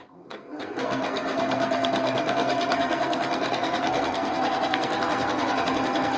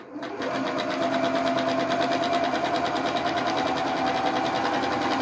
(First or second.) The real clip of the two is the second